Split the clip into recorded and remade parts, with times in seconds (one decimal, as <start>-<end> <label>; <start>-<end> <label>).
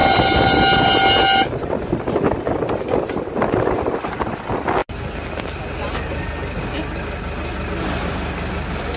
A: 0.0-9.0 recorded